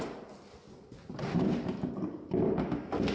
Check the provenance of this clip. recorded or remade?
recorded